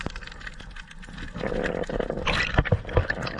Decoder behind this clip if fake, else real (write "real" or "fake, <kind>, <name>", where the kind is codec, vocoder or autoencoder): real